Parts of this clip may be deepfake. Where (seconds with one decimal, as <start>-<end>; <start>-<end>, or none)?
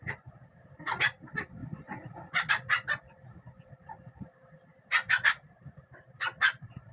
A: none